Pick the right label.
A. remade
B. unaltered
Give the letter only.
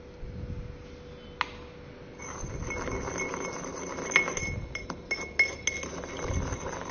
B